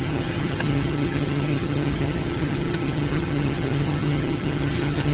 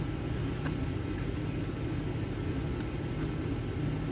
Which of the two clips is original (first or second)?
second